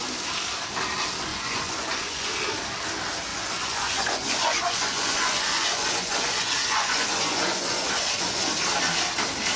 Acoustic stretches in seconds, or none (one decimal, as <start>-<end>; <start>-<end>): 0.0-1.3; 2.3-3.3; 8.5-9.6